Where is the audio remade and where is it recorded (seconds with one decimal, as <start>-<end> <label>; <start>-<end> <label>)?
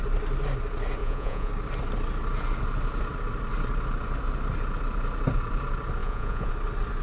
0.0-1.0 recorded; 1.0-1.5 remade; 1.5-6.0 recorded; 6.0-6.5 remade; 6.5-7.0 recorded